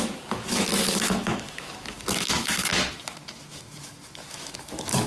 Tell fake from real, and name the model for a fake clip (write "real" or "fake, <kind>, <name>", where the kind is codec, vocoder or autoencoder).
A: fake, autoencoder, DAC-VAE